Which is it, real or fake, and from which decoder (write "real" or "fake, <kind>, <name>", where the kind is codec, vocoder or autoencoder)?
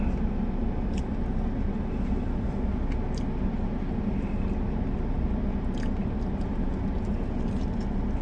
real